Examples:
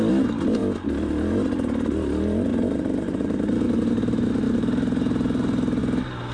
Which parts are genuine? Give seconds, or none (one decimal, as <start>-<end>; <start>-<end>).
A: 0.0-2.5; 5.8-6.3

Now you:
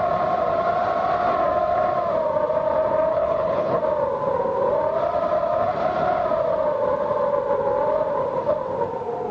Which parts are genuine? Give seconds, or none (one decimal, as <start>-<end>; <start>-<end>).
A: 0.0-3.1; 3.8-9.3

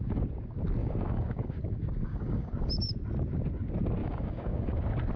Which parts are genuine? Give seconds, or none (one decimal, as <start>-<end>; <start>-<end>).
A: 0.0-0.8; 2.5-4.0; 4.7-5.2